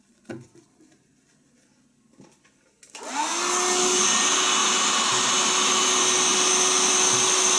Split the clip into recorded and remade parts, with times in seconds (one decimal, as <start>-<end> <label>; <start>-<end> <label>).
0.0-7.6 recorded